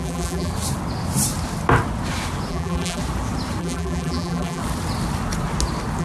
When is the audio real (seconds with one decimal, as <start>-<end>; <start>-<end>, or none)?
0.5-2.5; 3.0-3.6; 4.6-6.0